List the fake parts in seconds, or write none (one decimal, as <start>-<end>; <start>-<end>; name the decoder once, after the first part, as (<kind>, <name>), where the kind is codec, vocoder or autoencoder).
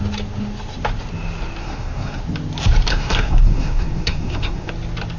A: 1.6-2.2 (codec, SNAC); 2.9-4.7